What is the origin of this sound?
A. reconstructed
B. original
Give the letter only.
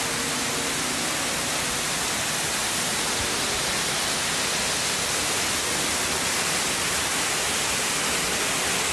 B